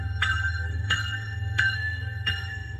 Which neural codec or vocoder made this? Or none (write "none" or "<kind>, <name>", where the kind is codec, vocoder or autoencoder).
codec, SNAC